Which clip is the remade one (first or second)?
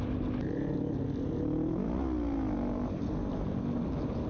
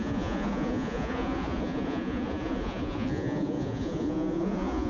second